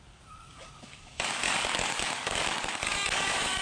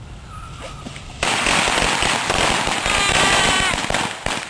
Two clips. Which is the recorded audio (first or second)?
second